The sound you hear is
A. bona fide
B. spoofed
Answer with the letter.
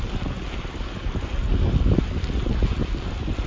A